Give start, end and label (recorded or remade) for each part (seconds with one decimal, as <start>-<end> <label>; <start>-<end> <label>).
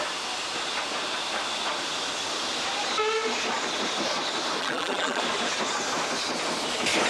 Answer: 0.0-4.6 recorded; 4.6-5.2 remade; 5.2-7.1 recorded